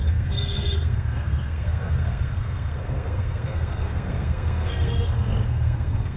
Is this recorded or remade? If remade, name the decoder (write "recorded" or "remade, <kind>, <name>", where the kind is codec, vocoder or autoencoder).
remade, codec, SNAC